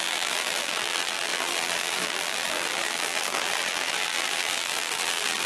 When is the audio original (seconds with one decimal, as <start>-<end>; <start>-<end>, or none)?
none